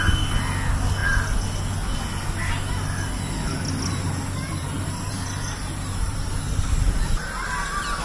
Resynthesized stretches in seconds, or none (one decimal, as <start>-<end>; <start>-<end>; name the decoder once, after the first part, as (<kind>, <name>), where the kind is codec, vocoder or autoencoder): 4.6-6.2 (vocoder, BigVGAN v2)